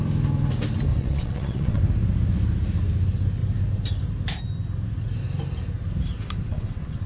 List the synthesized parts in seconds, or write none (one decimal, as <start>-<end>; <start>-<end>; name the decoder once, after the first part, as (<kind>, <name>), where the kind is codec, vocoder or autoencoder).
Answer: 0.9-1.8 (vocoder, WaveNeXt); 6.5-7.1